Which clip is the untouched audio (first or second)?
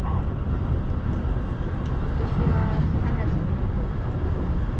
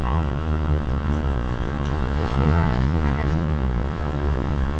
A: first